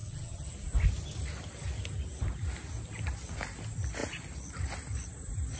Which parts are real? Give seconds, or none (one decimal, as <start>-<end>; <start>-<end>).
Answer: 0.5-5.6